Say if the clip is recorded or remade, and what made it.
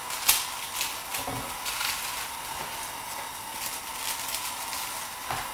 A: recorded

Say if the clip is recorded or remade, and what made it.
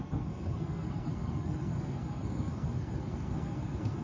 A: remade, codec, SNAC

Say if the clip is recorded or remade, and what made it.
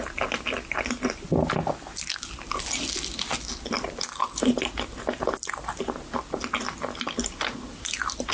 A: recorded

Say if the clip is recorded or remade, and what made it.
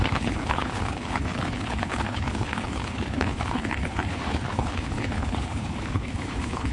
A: remade, codec, HILCodec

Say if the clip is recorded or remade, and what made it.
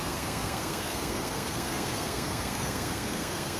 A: remade, codec, SNAC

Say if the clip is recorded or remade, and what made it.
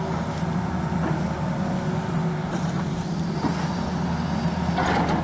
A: recorded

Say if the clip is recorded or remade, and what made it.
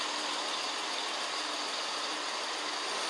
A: recorded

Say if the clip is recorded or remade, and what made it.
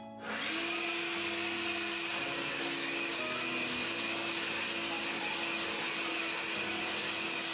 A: recorded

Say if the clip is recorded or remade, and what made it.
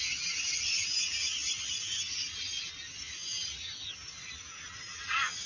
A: recorded